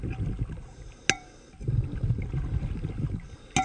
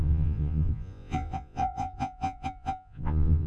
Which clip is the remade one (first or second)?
second